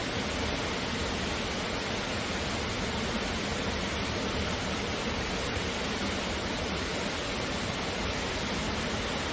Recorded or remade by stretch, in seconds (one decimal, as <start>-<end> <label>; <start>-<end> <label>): 0.0-3.5 recorded; 3.5-6.0 remade; 6.0-6.9 recorded; 6.9-8.0 remade; 8.0-9.3 recorded

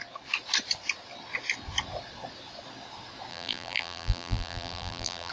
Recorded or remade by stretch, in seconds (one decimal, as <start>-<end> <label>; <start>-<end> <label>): 0.0-3.3 recorded; 3.3-5.3 remade

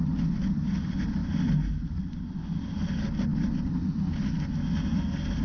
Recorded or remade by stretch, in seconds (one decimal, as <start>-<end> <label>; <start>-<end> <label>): 0.0-5.4 recorded

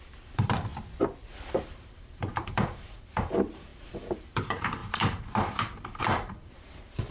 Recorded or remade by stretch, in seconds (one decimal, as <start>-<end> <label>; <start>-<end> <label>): 0.0-0.7 remade; 0.7-1.7 recorded; 1.7-7.1 remade